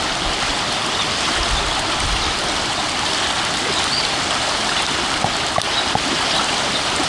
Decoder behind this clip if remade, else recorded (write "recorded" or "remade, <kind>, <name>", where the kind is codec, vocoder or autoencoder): remade, vocoder, BigVGAN v2